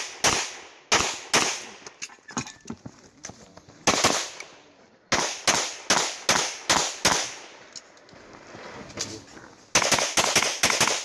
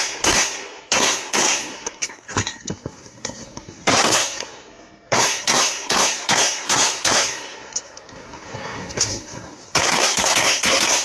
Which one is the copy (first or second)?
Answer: second